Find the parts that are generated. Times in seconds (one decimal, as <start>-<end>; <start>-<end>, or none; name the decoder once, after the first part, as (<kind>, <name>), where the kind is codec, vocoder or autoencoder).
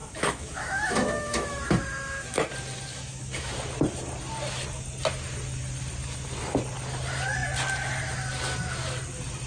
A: 0.0-2.5 (autoencoder, DAC-VAE); 2.9-3.5